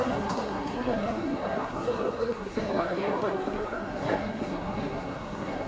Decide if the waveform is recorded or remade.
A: remade